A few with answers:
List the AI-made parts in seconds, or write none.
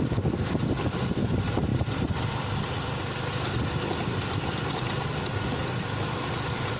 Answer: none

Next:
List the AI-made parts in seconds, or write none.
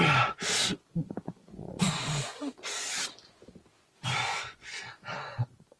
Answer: 0.6-2.9 (vocoder, Vocos); 3.7-5.8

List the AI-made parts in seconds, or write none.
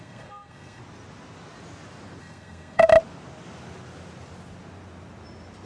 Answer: 0.0-0.8 (codec, SNAC); 2.2-2.9